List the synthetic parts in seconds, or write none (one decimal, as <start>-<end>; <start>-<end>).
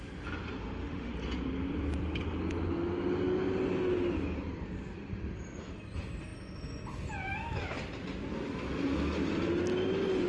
0.6-1.1